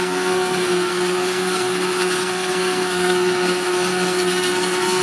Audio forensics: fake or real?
fake